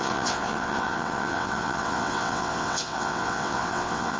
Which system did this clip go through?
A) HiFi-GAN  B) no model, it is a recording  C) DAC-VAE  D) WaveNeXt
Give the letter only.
D